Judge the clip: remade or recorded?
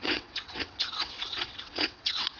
remade